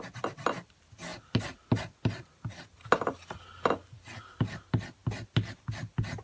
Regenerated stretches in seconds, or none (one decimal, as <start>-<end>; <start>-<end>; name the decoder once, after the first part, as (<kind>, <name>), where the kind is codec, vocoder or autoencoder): none

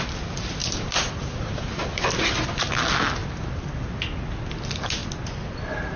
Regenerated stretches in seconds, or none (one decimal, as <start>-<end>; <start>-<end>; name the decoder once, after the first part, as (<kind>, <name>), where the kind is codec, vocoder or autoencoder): 0.6-2.7 (vocoder, BigVGAN v2); 3.2-3.9

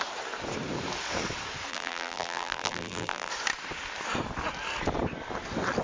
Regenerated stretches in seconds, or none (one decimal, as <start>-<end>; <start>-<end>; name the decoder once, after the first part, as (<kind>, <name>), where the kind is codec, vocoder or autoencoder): 1.7-3.3 (vocoder, BigVGAN v2)

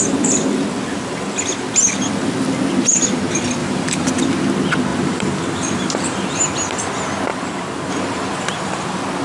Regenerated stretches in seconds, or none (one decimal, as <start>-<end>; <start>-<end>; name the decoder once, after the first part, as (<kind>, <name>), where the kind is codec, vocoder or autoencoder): 3.6-4.1 (vocoder, BigVGAN v2); 4.9-6.4; 7.3-7.9